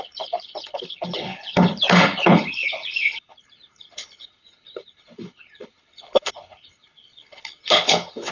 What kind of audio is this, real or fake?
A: fake